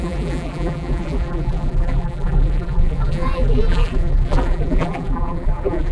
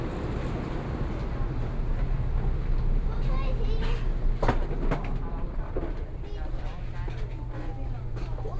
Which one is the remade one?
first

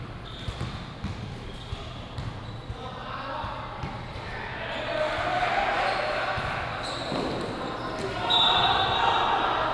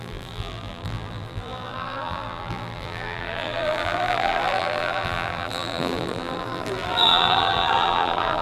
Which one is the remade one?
second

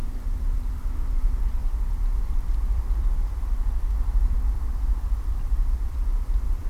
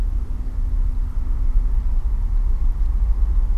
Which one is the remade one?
first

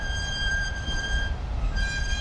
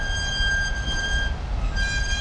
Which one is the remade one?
first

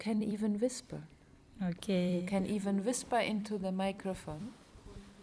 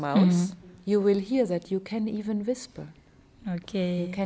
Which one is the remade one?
first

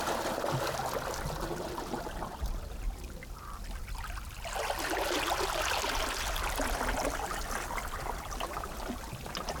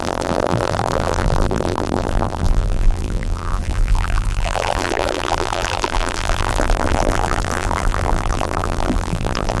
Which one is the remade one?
second